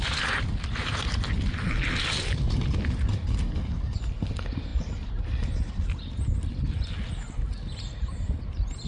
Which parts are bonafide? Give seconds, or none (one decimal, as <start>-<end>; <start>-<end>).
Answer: 0.0-4.7; 6.0-8.9